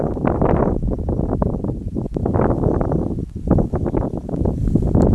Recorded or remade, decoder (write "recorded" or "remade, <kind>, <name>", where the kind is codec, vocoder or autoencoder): recorded